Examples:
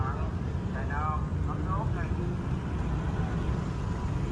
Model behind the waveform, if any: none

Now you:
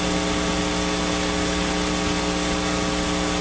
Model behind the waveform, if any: none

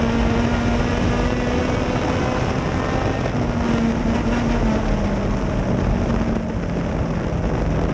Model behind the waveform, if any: none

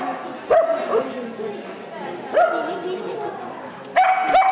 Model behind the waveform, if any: none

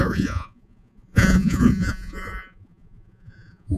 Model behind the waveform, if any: vocoder, Vocos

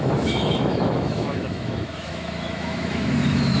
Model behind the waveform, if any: autoencoder, DAC-VAE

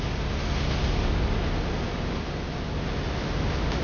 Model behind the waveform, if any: none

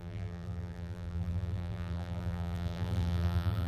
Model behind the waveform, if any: vocoder, BigVGAN v2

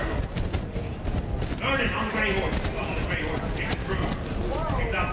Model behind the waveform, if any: none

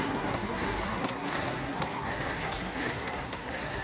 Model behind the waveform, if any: codec, SNAC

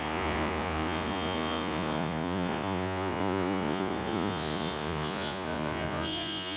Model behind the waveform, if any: vocoder, Vocos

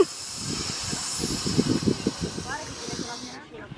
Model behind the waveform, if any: none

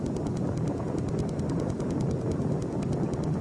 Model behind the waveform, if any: none